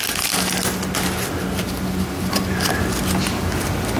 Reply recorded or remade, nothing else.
recorded